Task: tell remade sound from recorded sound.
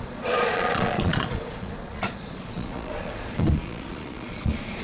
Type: remade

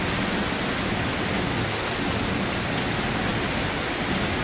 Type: recorded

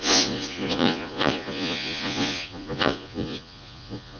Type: remade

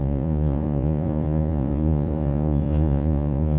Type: remade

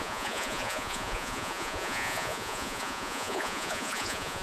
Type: remade